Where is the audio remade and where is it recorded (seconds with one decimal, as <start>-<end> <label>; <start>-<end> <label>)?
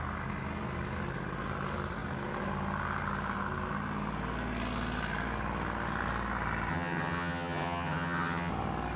0.0-6.7 recorded; 6.7-8.5 remade; 8.5-9.0 recorded